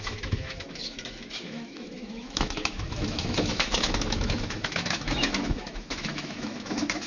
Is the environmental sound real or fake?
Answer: fake